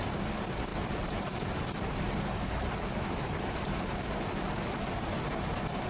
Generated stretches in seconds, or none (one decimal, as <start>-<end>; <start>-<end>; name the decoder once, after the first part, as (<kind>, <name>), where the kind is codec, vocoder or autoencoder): 0.7-4.0 (vocoder, BigVGAN v2)